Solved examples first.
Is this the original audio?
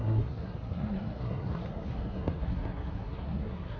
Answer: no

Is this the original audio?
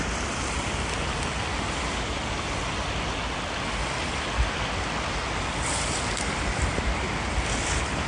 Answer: yes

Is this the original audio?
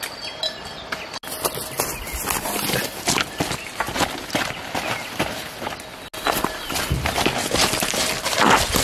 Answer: yes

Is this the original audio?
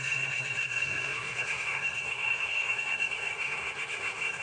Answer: no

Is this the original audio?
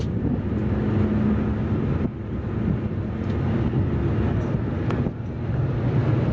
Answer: yes